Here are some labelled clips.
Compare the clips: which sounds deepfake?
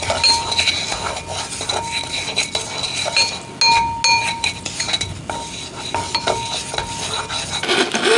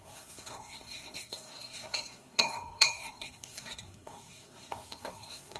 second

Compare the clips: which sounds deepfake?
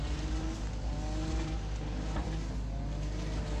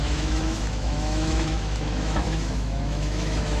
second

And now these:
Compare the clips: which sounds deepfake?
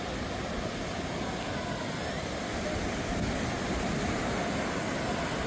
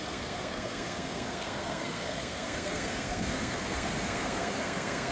second